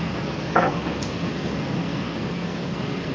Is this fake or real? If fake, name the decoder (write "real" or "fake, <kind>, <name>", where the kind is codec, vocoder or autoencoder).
fake, codec, SNAC